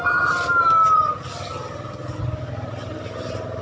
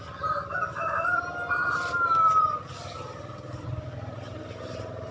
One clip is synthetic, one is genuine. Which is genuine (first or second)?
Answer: first